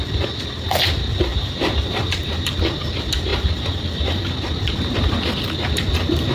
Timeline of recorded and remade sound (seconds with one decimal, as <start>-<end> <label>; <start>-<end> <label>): 0.0-1.3 recorded; 1.3-2.6 remade; 2.6-3.3 recorded; 3.3-4.7 remade; 4.7-6.3 recorded